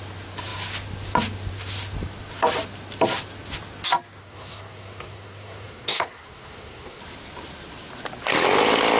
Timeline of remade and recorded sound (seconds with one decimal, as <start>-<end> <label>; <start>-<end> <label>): 0.0-4.2 recorded; 4.2-7.0 remade; 7.0-9.0 recorded